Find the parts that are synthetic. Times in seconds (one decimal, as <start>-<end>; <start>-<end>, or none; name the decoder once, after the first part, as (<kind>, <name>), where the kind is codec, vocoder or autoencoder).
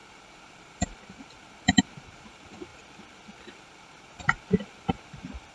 0.0-5.5 (vocoder, BigVGAN v2)